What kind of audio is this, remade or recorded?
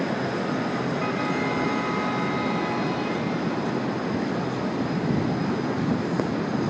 recorded